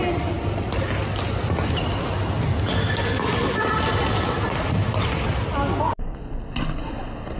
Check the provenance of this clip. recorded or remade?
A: recorded